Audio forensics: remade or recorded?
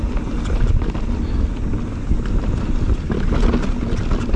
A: recorded